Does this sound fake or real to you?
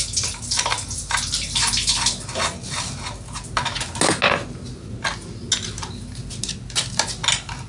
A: real